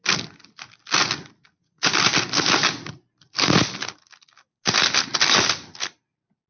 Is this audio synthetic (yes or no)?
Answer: no